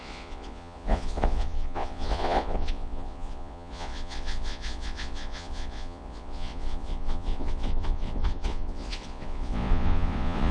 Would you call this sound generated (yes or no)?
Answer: yes